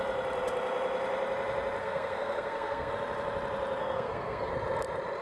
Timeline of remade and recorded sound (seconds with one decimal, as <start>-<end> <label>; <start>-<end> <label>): 0.0-1.8 recorded; 1.8-2.9 remade; 2.9-3.8 recorded; 3.8-4.5 remade; 4.5-5.2 recorded